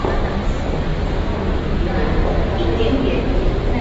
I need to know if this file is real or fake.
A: real